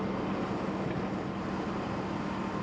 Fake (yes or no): no